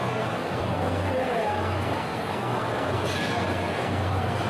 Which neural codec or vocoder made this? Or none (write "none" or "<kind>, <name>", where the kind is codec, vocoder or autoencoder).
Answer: codec, SNAC